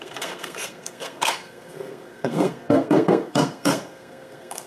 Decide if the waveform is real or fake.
fake